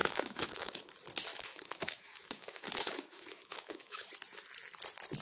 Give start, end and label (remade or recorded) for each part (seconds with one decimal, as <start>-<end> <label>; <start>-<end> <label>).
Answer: 0.0-0.9 remade; 0.9-1.3 recorded; 1.3-4.1 remade; 4.1-5.2 recorded